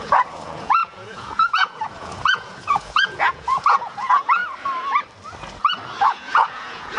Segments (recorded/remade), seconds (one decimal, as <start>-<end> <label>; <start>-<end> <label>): 0.0-4.4 remade; 4.4-6.0 recorded; 6.0-7.0 remade